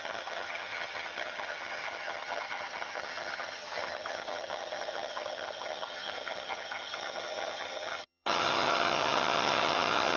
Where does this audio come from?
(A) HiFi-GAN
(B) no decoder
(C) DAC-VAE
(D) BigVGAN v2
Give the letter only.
A